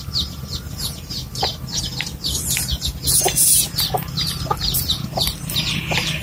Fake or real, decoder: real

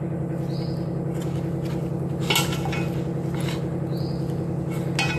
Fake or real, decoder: real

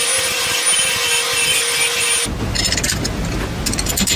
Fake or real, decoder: real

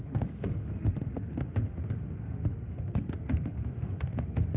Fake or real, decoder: fake, autoencoder, DAC-VAE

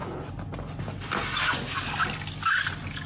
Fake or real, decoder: real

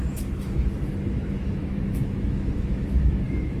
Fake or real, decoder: fake, autoencoder, DAC-VAE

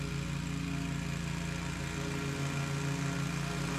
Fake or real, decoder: real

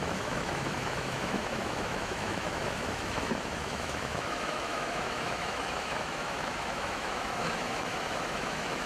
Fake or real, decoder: fake, autoencoder, DAC-VAE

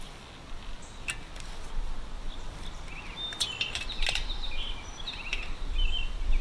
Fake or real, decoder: real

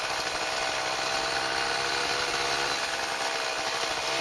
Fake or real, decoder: real